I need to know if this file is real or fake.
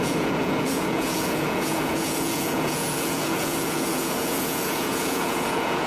fake